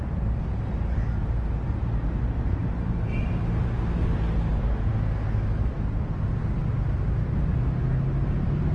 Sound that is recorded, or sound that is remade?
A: recorded